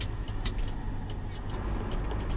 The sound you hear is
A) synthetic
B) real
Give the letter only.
B